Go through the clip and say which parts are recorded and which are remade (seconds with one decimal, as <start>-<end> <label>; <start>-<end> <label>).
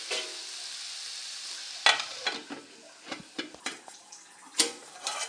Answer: 0.0-5.3 recorded